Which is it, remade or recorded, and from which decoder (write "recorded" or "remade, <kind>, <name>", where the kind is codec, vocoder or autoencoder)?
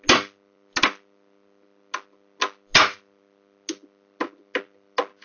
recorded